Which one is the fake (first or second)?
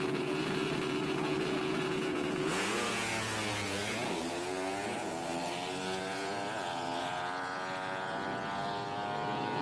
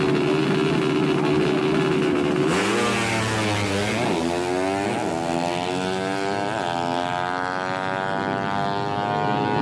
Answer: first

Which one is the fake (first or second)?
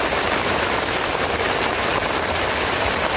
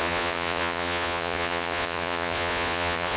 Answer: second